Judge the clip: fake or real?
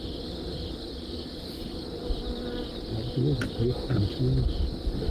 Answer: real